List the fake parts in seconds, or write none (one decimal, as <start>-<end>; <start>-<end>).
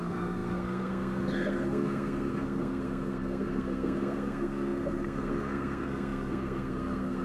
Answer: 0.0-7.2